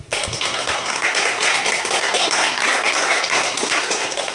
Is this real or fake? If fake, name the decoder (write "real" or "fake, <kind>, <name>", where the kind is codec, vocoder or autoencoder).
fake, codec, SNAC